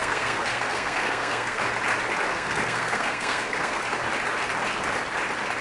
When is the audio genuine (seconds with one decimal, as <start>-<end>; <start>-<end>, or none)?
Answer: 1.6-2.3; 3.8-5.6

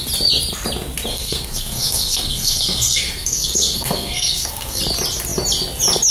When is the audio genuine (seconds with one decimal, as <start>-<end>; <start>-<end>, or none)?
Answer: 0.0-1.1; 4.8-6.1